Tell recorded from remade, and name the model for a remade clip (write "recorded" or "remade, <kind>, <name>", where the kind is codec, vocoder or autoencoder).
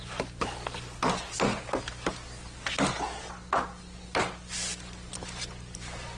recorded